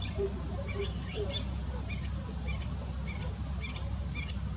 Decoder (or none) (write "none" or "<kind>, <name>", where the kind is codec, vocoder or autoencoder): vocoder, BigVGAN v2